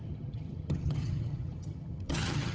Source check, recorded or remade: remade